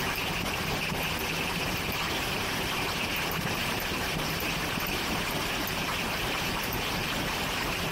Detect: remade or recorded remade